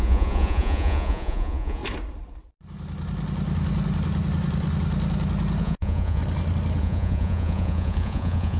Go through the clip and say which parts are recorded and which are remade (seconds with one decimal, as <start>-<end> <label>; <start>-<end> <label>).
0.0-1.8 remade; 1.8-5.6 recorded; 5.6-6.2 remade; 6.2-6.8 recorded; 6.8-8.6 remade